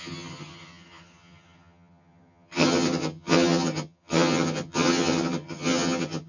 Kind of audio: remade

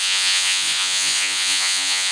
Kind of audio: remade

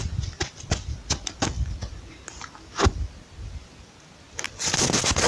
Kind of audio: recorded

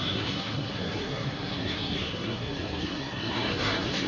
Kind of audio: remade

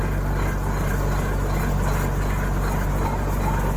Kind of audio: recorded